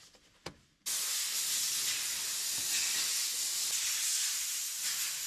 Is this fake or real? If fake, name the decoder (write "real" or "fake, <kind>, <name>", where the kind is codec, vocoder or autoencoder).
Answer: real